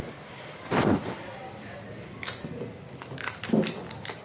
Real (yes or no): yes